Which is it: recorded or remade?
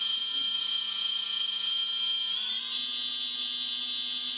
recorded